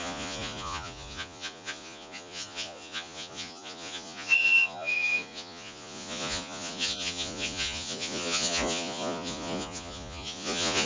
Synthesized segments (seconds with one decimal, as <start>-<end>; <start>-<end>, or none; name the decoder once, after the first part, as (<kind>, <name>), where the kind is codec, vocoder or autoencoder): 0.0-10.9 (vocoder, Vocos)